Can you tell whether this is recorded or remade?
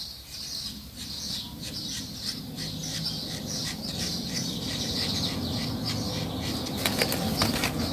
recorded